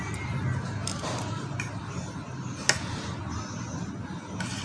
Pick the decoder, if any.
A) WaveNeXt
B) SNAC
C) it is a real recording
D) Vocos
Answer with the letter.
C